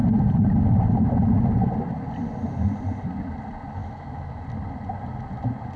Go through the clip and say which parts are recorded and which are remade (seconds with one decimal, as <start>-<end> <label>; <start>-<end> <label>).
0.0-3.8 recorded; 3.8-4.4 remade; 4.4-5.8 recorded